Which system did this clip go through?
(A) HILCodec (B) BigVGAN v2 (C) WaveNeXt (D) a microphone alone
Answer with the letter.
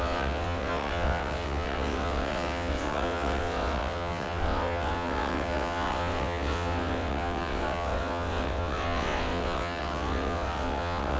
C